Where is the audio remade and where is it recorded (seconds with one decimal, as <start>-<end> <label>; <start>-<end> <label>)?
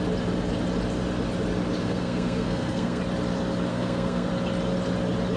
0.0-1.8 recorded; 1.8-3.0 remade; 3.0-3.7 recorded; 3.7-4.3 remade; 4.3-5.4 recorded